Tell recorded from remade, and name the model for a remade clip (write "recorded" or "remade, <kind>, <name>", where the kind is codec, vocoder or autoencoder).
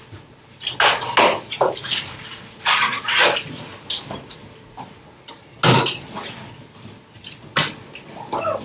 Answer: recorded